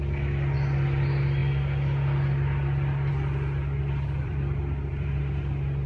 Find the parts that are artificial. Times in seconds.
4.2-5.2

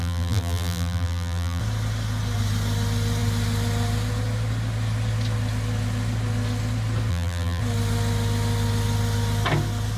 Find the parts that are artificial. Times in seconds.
0.0-1.6; 7.1-7.6

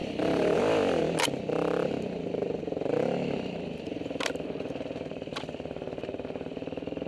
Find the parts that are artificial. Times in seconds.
0.0-1.0

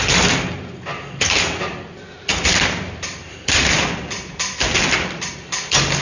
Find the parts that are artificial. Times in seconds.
2.3-5.3